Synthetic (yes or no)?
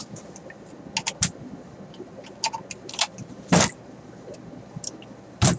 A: no